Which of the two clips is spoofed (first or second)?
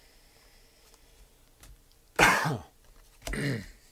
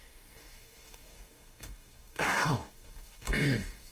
second